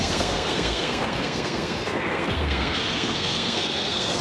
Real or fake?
fake